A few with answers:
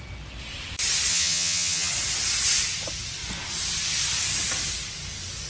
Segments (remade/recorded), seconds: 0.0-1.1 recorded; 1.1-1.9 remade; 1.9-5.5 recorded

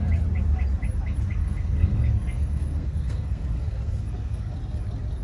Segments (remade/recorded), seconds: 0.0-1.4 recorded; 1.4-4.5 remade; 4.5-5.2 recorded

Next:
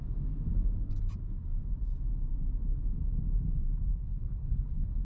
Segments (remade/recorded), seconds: 0.0-3.9 recorded; 3.9-5.0 remade

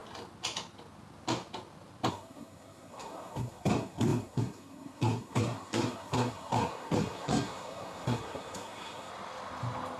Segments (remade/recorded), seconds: 0.0-2.1 recorded; 2.1-9.1 remade; 9.1-10.0 recorded

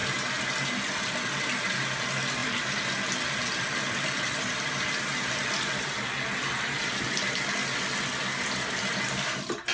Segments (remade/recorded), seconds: 0.0-2.4 recorded; 2.4-4.8 remade; 4.8-9.7 recorded